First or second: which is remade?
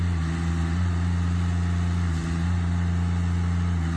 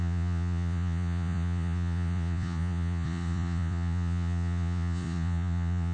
second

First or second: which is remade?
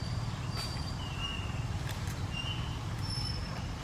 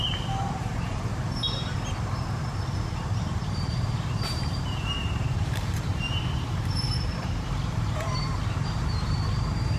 second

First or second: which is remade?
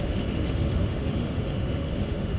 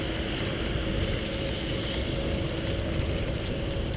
first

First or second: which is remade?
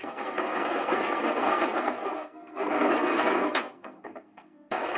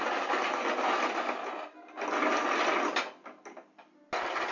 first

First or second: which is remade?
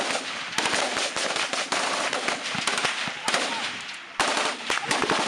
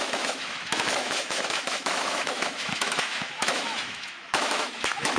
second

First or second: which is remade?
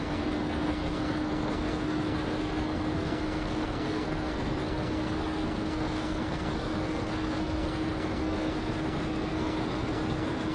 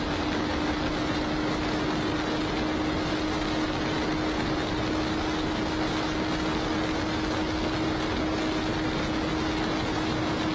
first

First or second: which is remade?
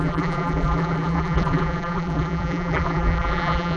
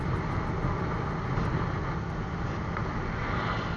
first